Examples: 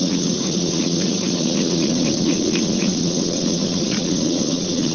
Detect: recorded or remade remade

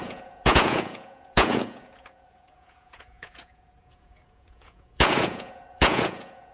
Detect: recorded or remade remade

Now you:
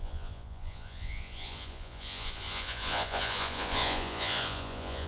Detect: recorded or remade remade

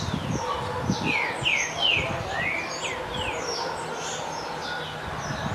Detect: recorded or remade recorded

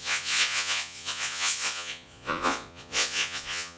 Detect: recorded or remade remade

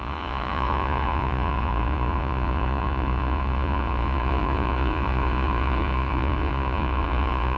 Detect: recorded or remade remade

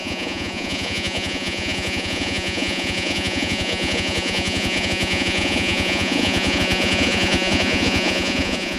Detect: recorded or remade remade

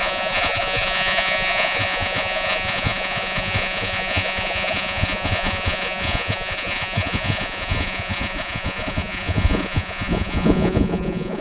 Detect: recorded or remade remade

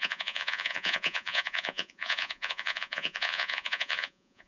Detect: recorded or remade remade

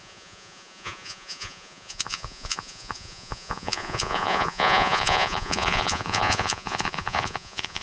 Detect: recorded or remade remade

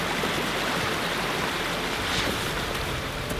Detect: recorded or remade recorded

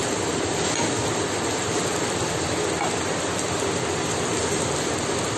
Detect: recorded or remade recorded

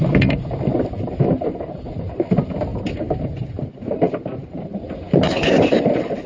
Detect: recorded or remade recorded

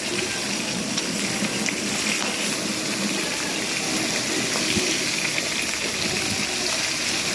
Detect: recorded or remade recorded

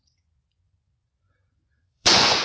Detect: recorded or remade remade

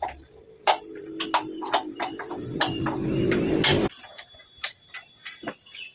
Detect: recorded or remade recorded